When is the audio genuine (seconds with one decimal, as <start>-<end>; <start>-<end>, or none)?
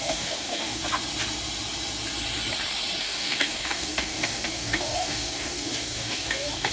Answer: 0.8-3.0